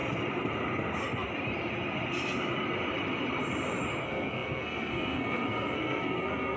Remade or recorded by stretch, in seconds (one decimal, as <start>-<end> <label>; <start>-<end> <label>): 0.0-4.0 recorded; 4.0-6.6 remade